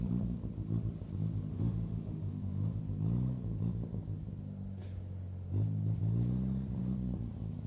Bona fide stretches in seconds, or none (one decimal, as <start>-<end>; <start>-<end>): 0.0-1.5; 2.8-7.7